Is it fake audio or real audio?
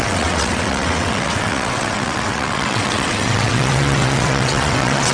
fake